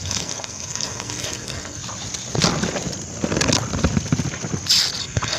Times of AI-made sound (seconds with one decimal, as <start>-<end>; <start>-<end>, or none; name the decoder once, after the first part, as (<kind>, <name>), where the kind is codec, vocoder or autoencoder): 0.0-1.8 (codec, SNAC); 5.0-5.4